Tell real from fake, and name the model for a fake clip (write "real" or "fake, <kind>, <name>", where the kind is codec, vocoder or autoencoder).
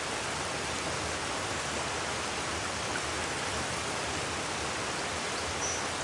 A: real